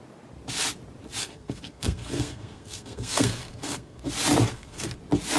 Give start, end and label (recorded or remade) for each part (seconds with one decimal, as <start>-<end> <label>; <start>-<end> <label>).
0.0-1.2 recorded; 1.2-4.1 remade; 4.1-4.5 recorded; 4.5-5.0 remade; 5.0-5.4 recorded